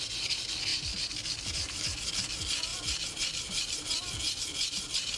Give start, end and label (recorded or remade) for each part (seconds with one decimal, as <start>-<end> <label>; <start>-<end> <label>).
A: 0.0-0.7 recorded; 0.7-1.8 remade; 1.8-2.7 recorded; 2.7-5.2 remade